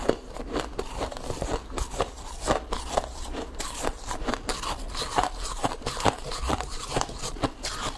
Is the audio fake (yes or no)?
yes